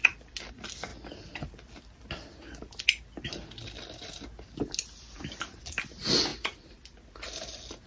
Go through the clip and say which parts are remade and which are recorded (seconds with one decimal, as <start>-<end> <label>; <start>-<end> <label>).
0.0-7.9 recorded